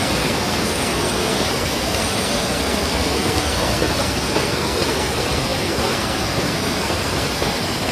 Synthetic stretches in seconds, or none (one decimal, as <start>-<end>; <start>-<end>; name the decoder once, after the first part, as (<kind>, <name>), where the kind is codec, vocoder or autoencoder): 0.0-7.9 (codec, SNAC)